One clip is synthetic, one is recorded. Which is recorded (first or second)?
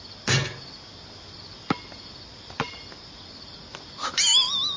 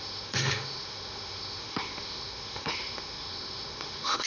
first